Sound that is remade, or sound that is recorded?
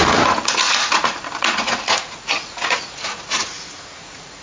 remade